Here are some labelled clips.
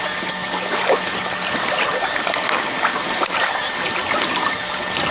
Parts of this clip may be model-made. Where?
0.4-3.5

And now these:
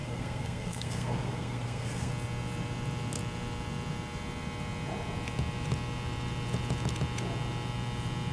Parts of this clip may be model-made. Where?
0.0-2.1

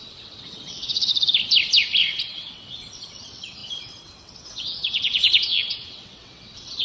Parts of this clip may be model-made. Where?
0.0-1.1; 2.0-6.8

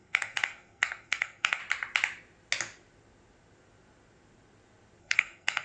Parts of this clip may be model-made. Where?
0.0-1.6; 5.0-5.6

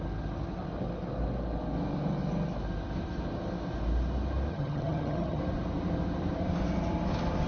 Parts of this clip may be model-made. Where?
4.5-5.4

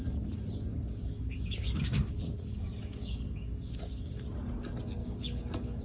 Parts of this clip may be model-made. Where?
0.7-4.2; 5.0-5.8